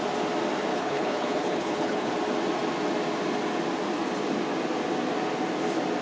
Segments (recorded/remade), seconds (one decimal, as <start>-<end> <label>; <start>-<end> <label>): 0.0-0.7 recorded; 0.7-2.1 remade; 2.1-6.0 recorded